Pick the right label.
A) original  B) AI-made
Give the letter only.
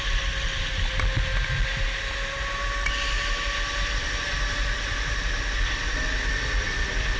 A